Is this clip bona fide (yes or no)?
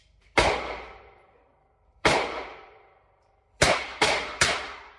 no